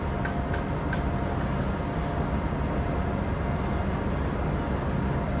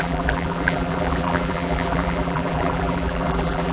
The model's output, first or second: second